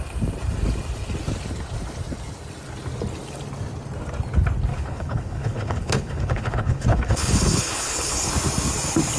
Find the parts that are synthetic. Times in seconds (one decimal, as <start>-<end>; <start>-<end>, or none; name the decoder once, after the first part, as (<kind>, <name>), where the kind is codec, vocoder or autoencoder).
4.7-8.3 (codec, HILCodec)

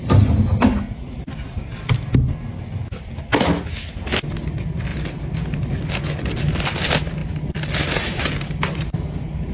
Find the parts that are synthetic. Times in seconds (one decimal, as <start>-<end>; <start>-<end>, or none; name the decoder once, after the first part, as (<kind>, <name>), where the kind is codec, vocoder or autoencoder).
none